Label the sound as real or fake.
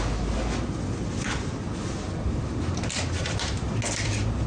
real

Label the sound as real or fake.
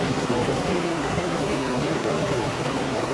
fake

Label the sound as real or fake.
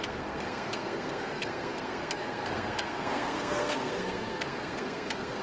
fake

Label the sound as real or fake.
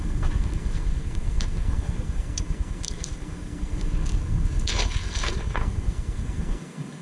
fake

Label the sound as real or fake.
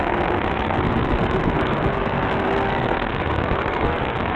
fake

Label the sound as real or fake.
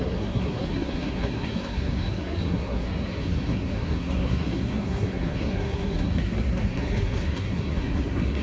fake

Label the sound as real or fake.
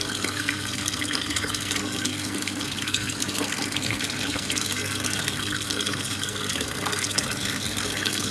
fake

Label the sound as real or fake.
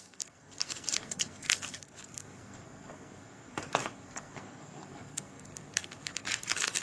fake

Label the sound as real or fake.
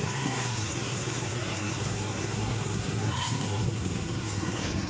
fake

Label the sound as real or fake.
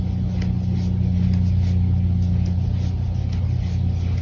real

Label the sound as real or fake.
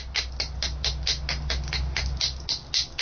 real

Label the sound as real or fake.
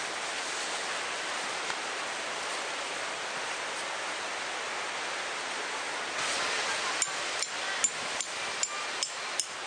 real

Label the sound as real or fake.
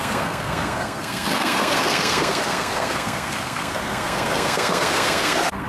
fake